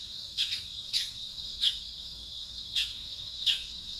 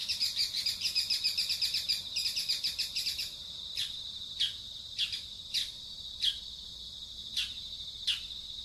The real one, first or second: second